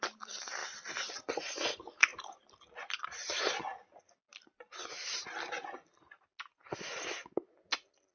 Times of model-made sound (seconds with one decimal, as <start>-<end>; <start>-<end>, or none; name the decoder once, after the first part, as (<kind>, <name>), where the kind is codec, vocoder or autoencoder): none